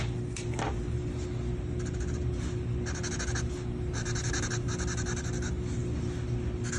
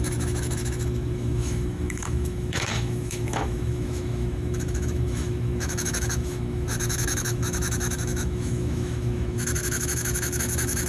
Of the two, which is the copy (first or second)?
second